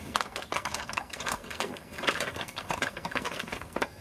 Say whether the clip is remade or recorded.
remade